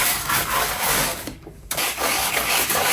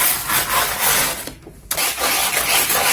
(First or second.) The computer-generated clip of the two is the first